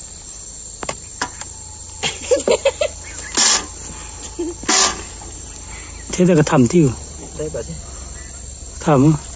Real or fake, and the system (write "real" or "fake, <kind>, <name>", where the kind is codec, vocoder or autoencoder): real